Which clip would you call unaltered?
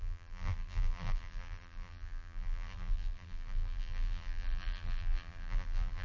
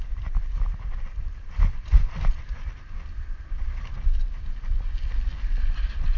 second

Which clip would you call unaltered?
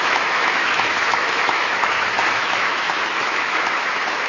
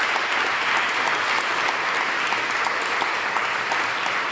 second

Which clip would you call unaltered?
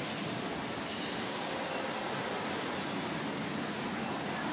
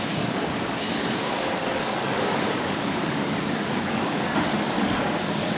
first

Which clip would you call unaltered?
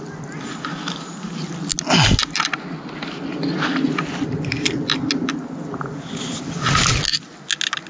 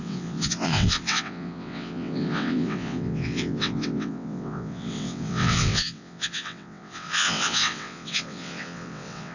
first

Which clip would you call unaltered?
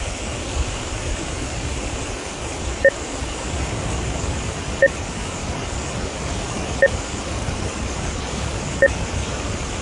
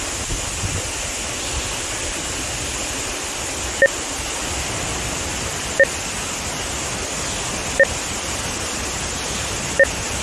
second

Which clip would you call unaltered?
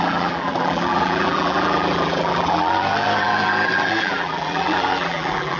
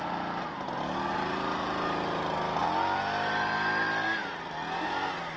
second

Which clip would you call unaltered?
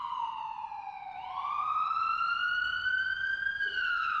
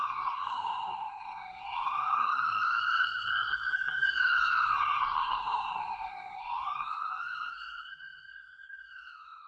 first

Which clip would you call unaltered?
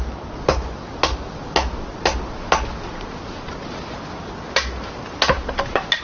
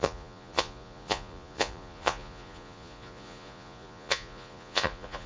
first